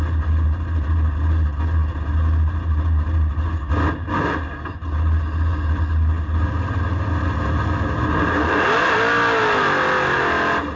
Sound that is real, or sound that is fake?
real